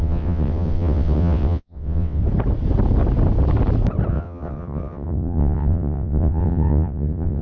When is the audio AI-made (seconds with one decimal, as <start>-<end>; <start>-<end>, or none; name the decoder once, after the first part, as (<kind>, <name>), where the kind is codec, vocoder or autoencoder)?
0.0-2.2 (vocoder, WaveNeXt); 4.1-7.4

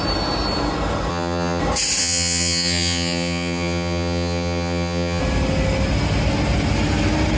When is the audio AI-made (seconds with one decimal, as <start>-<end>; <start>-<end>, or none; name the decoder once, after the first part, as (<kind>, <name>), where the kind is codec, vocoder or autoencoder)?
1.1-1.6 (vocoder, HiFi-GAN); 2.0-5.2